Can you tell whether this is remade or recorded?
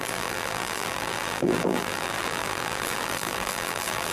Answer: remade